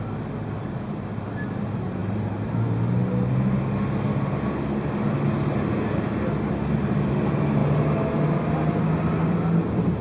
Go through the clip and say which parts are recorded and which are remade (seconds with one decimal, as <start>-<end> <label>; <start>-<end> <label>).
0.0-10.0 recorded